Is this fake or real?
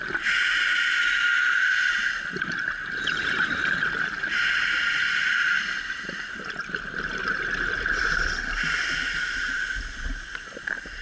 real